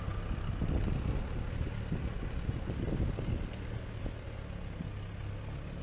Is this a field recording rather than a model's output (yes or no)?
yes